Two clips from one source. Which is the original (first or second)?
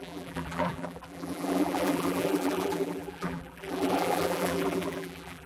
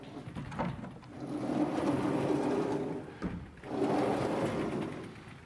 second